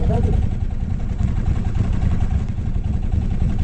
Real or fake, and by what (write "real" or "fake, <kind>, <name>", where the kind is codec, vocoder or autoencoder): fake, vocoder, WaveNeXt